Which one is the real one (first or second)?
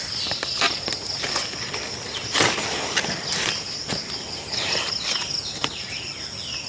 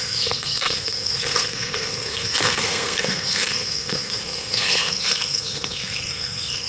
first